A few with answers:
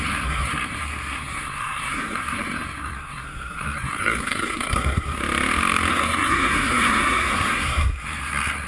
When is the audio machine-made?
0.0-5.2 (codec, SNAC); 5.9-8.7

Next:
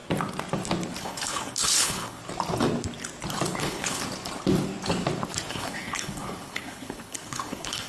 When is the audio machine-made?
1.0-2.2 (codec, HILCodec); 3.6-4.0; 5.5-7.9